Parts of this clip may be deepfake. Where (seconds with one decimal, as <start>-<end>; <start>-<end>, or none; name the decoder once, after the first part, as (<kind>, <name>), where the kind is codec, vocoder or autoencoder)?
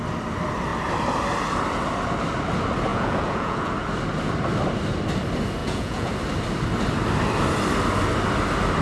2.9-3.7 (vocoder, Vocos); 5.6-6.1